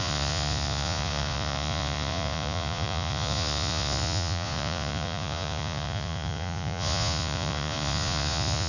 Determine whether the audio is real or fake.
fake